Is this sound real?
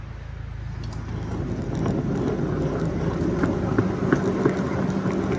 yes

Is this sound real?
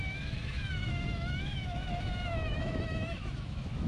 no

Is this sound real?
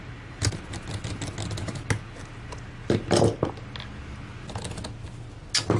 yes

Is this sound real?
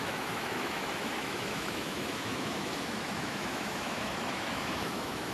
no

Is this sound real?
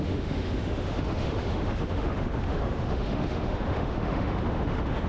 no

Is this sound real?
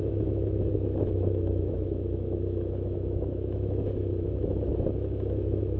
no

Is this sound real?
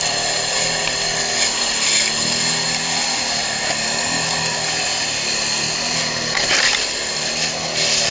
yes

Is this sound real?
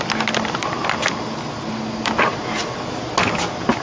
yes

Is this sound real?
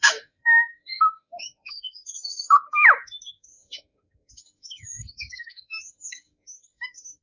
no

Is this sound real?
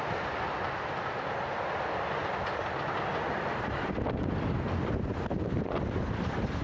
yes